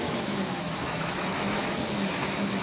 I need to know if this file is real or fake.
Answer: fake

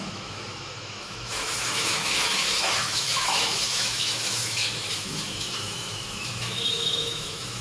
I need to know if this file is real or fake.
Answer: fake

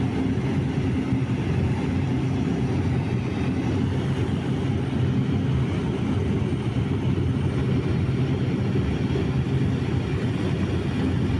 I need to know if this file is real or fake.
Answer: real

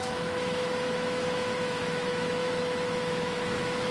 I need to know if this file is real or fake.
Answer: fake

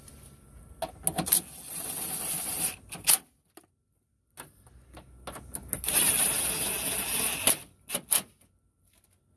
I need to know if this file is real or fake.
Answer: real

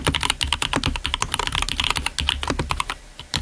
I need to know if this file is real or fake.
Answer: real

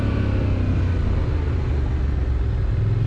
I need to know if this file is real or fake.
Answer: real